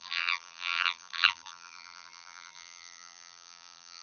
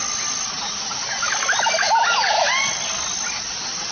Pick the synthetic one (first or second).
first